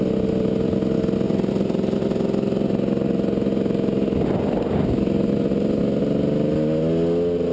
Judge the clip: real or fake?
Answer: real